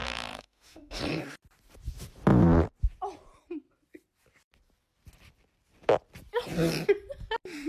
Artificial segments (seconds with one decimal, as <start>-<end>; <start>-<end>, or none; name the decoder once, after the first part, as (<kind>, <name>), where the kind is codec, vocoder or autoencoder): 0.0-1.0 (autoencoder, DAC-VAE)